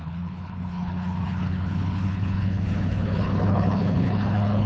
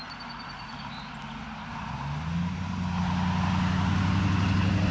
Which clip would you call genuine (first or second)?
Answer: second